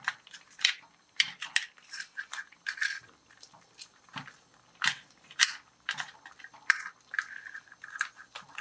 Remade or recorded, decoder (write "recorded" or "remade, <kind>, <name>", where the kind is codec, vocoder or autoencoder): remade, vocoder, BigVGAN v2